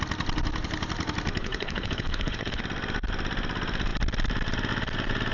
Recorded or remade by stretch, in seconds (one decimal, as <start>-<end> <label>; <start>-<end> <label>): 0.0-1.4 recorded; 1.4-2.6 remade; 2.6-5.3 recorded